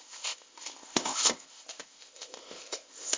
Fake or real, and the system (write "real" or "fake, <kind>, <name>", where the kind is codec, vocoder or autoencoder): fake, codec, ZipCodec